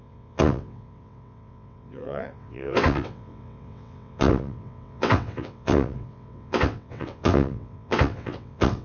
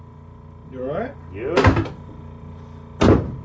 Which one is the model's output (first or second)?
first